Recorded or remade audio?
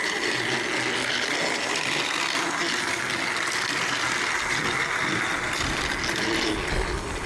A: recorded